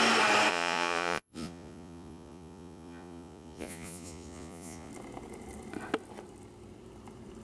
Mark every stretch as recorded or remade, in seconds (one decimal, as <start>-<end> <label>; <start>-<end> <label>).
0.0-0.5 recorded; 0.5-4.9 remade; 4.9-7.4 recorded